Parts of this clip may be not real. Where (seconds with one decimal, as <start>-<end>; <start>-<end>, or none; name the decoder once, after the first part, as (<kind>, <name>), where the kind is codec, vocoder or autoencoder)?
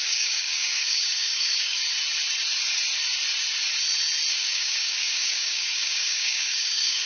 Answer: 0.0-1.8 (codec, DAC); 4.3-7.0